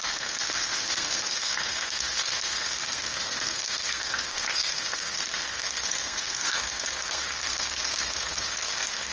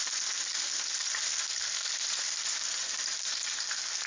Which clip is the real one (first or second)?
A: second